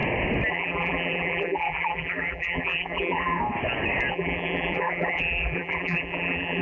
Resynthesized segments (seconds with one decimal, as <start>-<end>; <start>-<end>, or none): 0.5-3.4; 4.1-6.6